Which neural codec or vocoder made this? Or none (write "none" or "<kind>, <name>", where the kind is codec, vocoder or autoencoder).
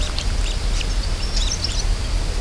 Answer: none